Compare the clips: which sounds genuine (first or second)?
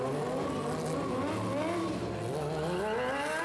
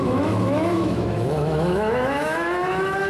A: first